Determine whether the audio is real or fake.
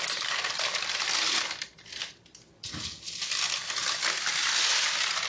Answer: real